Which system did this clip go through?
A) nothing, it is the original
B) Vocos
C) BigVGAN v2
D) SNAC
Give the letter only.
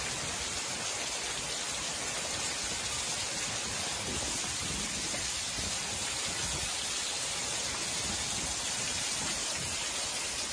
A